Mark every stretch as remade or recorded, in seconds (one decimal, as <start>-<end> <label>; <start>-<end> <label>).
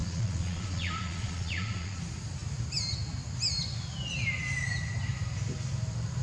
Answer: 0.0-2.0 remade; 2.0-6.2 recorded